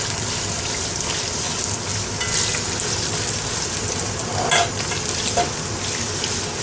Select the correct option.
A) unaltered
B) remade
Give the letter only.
A